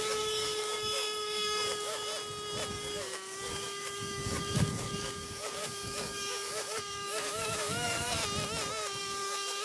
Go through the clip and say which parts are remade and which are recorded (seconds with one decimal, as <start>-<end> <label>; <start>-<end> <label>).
0.0-2.1 remade; 2.1-2.7 recorded; 2.7-8.2 remade; 8.2-9.0 recorded; 9.0-9.6 remade